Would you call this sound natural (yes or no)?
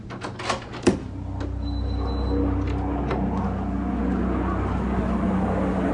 yes